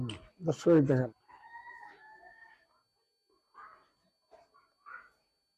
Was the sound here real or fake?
real